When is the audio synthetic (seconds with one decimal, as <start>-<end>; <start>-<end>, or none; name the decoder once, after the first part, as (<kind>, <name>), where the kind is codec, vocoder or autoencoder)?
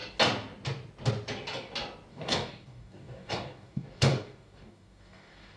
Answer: 2.1-5.6 (codec, DAC)